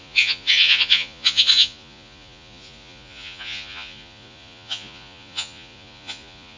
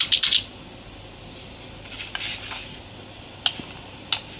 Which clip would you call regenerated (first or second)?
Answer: first